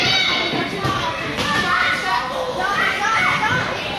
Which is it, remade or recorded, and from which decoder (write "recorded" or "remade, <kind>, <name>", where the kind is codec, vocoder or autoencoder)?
recorded